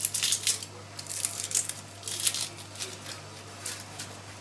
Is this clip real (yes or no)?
yes